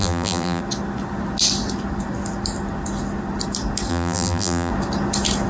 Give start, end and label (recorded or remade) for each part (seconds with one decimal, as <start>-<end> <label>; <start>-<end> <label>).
0.0-0.6 remade; 0.6-3.9 recorded; 3.9-4.7 remade; 4.7-5.5 recorded